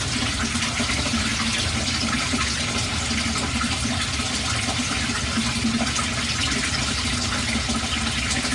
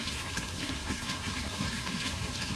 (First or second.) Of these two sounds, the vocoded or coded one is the second